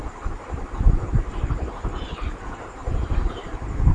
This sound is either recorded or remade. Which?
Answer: remade